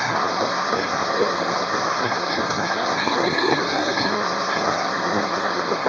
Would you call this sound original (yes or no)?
no